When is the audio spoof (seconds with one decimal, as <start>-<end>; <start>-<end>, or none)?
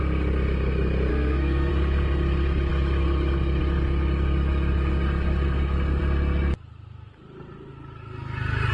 1.1-1.7